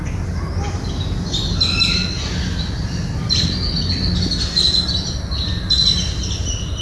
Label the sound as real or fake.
real